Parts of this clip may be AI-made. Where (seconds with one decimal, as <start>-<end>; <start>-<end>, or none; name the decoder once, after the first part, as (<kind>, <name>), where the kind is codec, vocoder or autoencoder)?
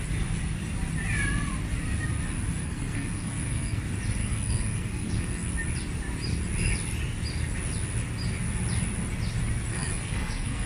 2.6-3.8 (codec, SNAC); 4.2-5.5; 9.7-10.7